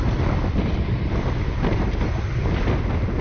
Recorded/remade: recorded